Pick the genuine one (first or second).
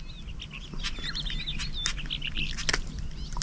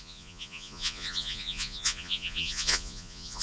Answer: first